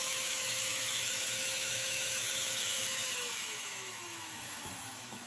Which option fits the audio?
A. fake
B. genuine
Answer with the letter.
A